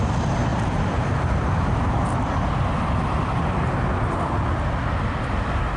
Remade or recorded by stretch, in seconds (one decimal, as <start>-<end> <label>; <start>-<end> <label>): 0.0-0.5 recorded; 0.5-2.5 remade; 2.5-5.8 recorded

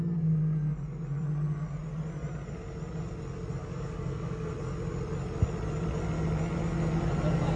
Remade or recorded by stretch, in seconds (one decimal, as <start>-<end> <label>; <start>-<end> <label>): 0.0-3.6 recorded; 3.6-4.5 remade; 4.5-7.6 recorded

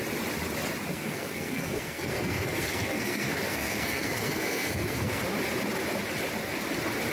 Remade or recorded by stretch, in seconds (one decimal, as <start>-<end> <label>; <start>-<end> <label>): 0.0-0.9 recorded; 0.9-5.2 remade; 5.2-7.1 recorded

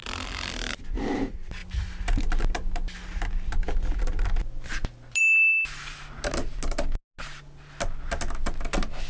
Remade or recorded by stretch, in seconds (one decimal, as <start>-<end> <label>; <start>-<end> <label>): 0.0-9.1 recorded